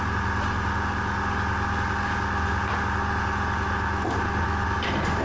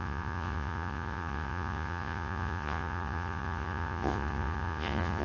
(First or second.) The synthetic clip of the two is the second